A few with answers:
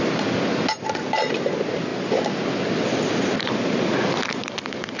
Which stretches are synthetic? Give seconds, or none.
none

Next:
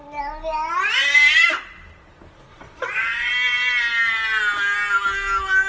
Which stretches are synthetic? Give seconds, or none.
2.5-3.3 (vocoder, WaveNeXt)

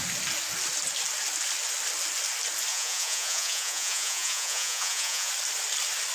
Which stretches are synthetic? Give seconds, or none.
2.7-5.3 (vocoder, Vocos)